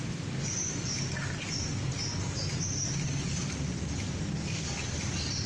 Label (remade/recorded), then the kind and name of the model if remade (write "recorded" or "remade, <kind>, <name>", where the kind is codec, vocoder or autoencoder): recorded